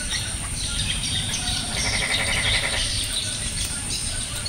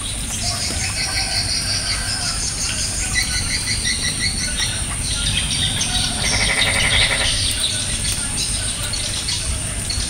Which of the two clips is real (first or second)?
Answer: second